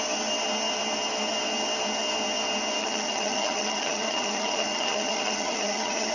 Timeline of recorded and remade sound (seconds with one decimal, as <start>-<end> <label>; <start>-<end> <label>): 0.0-2.8 recorded; 2.8-6.1 remade